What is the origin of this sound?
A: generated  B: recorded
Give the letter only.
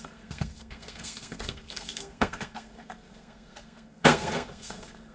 A